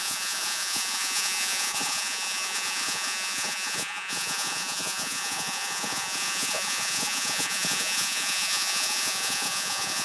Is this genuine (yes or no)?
no